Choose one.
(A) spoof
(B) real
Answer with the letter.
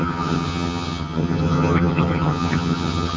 A